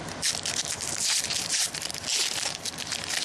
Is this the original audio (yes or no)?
yes